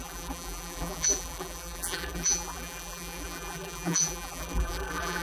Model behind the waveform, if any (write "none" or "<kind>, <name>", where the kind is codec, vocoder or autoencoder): vocoder, BigVGAN v2